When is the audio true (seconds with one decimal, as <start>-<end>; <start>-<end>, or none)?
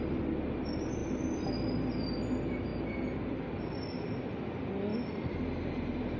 0.0-1.0; 1.9-2.7; 3.8-6.2